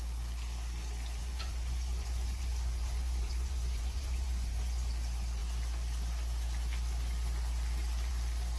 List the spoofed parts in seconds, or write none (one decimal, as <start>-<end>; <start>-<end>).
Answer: 1.2-4.9